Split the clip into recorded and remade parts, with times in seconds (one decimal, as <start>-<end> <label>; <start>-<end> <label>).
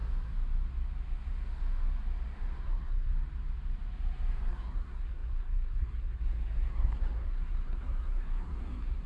0.0-2.6 recorded; 2.6-3.1 remade; 3.1-4.5 recorded; 4.5-9.1 remade